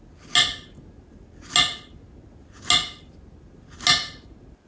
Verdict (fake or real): real